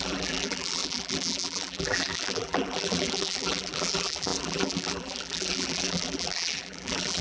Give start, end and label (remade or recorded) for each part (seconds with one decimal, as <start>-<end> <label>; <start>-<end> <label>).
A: 0.0-7.2 remade